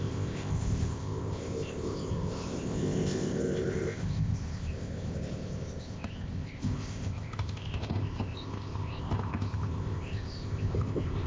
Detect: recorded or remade remade